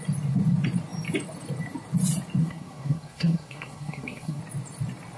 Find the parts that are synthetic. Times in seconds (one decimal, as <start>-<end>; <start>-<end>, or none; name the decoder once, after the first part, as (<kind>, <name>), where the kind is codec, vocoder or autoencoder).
2.4-4.4 (codec, SNAC)